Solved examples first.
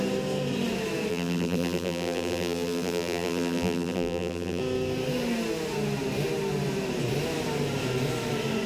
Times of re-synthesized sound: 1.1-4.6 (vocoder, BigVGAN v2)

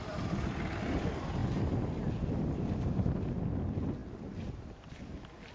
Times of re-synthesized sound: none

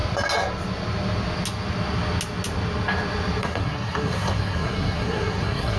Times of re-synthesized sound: 3.4-5.8 (codec, SNAC)

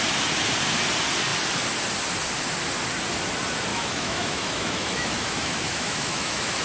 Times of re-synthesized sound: 3.7-6.6 (autoencoder, DAC-VAE)

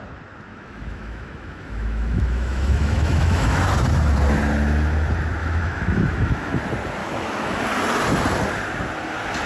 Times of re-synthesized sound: 0.5-3.6 (autoencoder, DAC-VAE); 5.4-6.6; 7.0-7.6